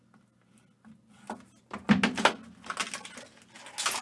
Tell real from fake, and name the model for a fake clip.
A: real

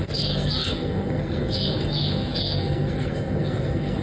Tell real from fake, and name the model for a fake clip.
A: fake, codec, SNAC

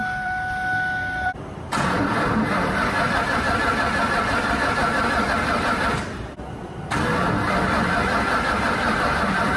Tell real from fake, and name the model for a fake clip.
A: real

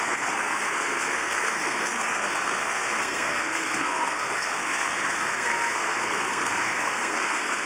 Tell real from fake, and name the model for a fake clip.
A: fake, codec, SNAC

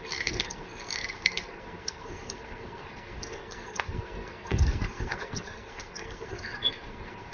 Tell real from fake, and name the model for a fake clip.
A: fake, codec, SNAC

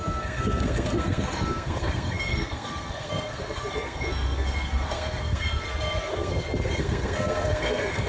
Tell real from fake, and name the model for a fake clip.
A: fake, codec, SNAC